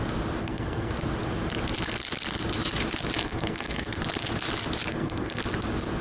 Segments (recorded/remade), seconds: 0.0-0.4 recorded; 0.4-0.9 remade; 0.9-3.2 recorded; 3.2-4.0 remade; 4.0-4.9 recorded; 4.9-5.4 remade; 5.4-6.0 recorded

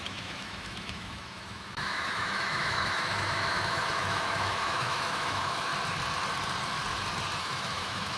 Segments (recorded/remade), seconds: 0.0-5.7 remade; 5.7-7.4 recorded; 7.4-8.2 remade